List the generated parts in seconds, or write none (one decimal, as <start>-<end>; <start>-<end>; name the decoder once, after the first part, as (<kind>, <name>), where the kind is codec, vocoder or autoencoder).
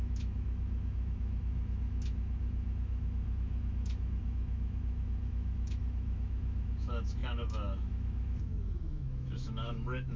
0.0-10.2 (autoencoder, DAC-VAE)